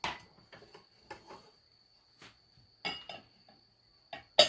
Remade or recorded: recorded